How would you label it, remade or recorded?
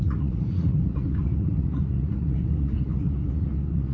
remade